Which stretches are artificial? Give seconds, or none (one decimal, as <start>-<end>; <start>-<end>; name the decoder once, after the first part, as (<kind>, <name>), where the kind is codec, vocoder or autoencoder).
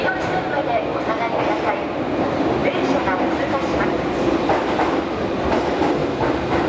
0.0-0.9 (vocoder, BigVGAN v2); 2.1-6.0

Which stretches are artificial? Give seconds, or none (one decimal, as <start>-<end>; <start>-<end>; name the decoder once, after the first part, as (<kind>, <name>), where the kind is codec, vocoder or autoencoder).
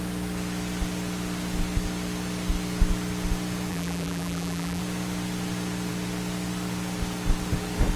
3.7-4.8 (vocoder, BigVGAN v2)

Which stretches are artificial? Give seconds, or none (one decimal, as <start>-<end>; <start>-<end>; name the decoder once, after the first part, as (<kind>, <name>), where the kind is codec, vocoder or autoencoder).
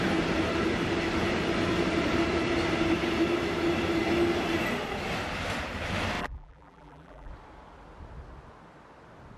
6.2-7.3 (vocoder, BigVGAN v2)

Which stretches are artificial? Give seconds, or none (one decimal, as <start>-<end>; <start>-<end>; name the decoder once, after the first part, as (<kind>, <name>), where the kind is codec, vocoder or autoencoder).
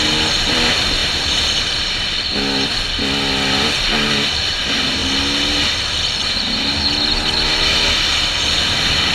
1.0-2.2 (vocoder, BigVGAN v2)